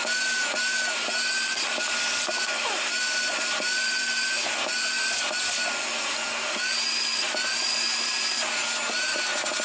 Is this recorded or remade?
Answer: recorded